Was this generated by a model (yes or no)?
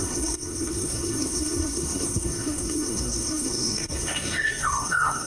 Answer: yes